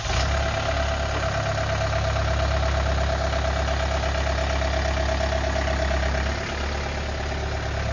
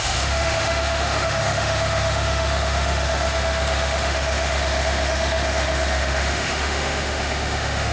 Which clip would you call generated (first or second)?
second